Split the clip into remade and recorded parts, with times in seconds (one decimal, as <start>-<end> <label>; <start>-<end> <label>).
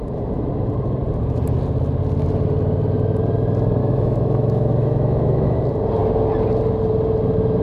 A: 0.0-3.8 recorded; 3.8-5.6 remade; 5.6-7.6 recorded